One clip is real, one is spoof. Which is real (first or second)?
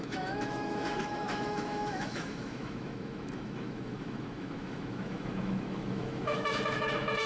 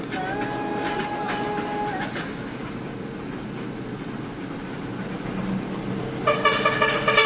second